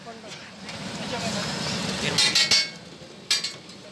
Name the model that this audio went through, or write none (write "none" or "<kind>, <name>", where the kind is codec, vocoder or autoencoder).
none